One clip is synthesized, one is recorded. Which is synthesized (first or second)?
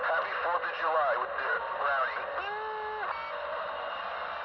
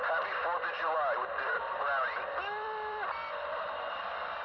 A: second